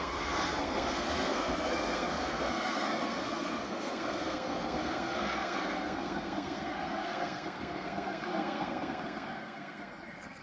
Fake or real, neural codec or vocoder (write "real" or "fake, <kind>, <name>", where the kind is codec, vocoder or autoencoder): fake, codec, SNAC